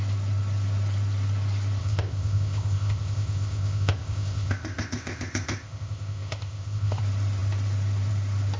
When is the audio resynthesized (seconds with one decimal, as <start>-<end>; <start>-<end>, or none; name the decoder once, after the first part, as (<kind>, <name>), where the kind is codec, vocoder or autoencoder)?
1.8-7.0 (codec, ZipCodec)